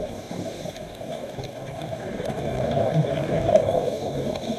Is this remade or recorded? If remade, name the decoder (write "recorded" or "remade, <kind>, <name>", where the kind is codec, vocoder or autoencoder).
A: remade, codec, DAC